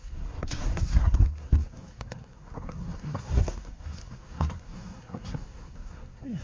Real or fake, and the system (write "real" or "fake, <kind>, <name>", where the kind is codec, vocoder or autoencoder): fake, codec, SNAC